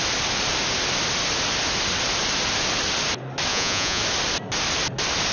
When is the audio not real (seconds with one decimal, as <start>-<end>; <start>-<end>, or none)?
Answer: 3.5-4.0